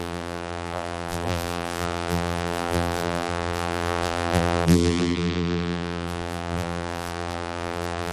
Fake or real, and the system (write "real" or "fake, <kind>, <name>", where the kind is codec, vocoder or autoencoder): fake, vocoder, BigVGAN v2